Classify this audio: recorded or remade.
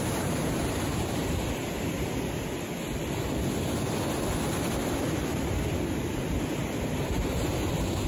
recorded